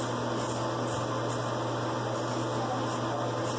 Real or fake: real